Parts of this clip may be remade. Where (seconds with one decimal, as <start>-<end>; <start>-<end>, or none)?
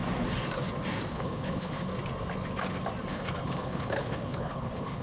1.1-1.9; 3.1-5.0